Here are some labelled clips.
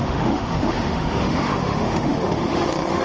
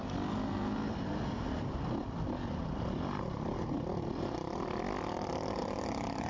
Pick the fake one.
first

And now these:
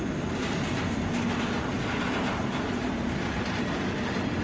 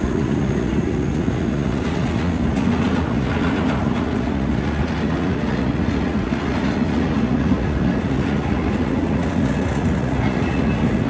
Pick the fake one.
second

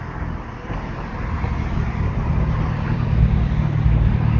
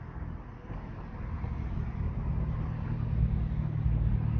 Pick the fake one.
first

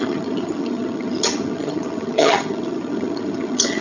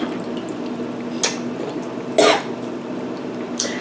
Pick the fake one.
first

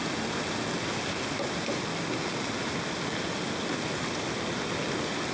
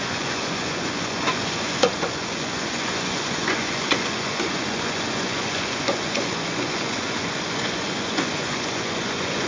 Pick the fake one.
second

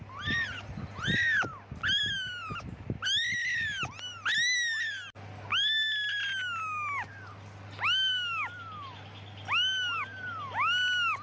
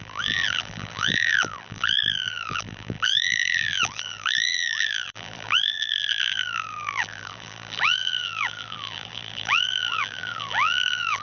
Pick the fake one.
second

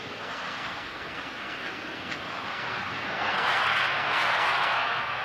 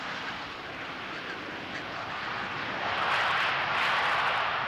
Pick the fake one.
first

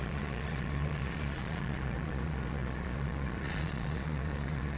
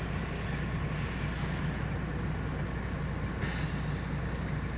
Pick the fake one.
first